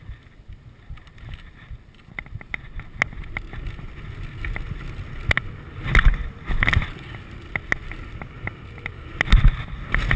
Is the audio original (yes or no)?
yes